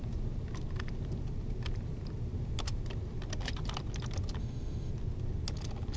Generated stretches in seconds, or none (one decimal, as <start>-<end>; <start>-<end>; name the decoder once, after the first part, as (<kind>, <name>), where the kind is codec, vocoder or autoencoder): 4.4-4.9 (autoencoder, DAC-VAE)